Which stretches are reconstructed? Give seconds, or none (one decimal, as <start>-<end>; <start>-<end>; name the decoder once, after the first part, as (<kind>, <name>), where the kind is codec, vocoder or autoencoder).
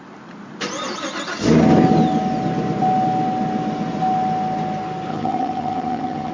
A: 5.1-6.3 (vocoder, HiFi-GAN)